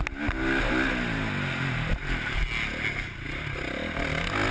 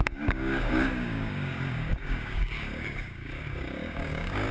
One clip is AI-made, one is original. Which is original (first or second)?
first